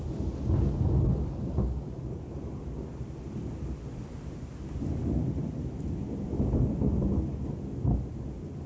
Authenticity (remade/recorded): recorded